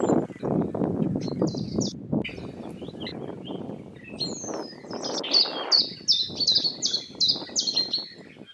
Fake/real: real